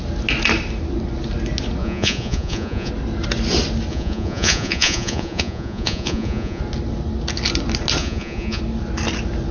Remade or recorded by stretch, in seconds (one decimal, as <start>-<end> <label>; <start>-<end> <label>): 0.0-1.8 recorded; 1.8-2.9 remade; 2.9-3.9 recorded; 3.9-6.6 remade; 6.6-8.0 recorded; 8.0-8.6 remade; 8.6-9.5 recorded